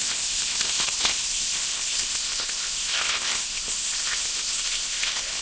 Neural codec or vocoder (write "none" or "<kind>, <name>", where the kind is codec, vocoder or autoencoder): codec, ZipCodec